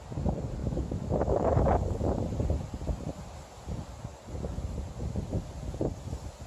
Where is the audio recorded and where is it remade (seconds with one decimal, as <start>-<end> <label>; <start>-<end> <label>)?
0.0-0.6 recorded; 0.6-1.6 remade; 1.6-6.5 recorded